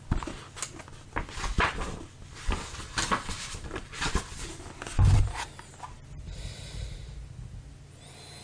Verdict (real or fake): real